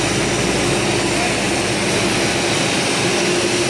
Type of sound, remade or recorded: recorded